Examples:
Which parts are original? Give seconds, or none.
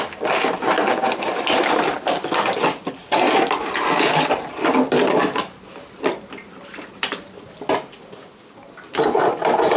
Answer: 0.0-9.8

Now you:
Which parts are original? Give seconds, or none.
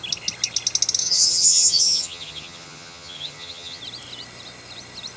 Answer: 0.0-1.0; 3.8-5.2